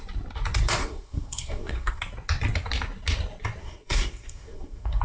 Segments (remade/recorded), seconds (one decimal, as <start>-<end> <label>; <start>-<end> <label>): 0.0-0.8 recorded; 0.8-2.0 remade; 2.0-3.6 recorded; 3.6-5.0 remade

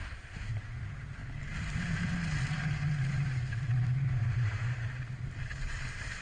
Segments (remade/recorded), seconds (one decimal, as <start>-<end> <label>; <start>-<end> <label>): 0.0-0.5 remade; 0.5-6.2 recorded